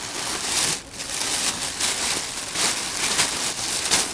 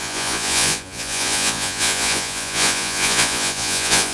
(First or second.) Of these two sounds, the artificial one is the second